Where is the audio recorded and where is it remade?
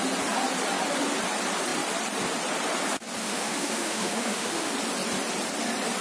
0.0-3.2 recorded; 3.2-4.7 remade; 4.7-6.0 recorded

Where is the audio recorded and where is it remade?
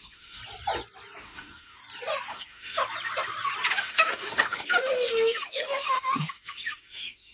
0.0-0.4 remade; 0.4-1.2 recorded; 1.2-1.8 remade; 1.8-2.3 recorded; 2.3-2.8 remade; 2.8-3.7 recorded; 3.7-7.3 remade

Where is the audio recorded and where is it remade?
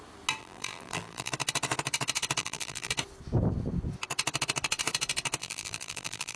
0.0-0.4 recorded; 0.4-1.3 remade; 1.3-2.4 recorded; 2.4-2.9 remade; 2.9-5.4 recorded; 5.4-6.4 remade